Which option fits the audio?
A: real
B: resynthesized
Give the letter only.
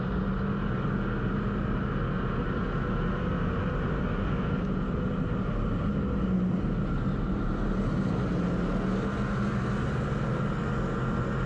A